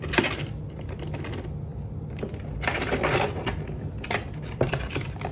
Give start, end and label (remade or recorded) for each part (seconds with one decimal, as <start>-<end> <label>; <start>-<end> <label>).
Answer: 0.0-5.3 recorded